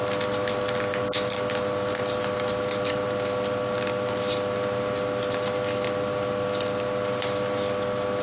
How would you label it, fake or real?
real